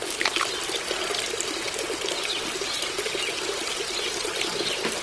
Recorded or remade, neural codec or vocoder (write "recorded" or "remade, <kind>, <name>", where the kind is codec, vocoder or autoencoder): recorded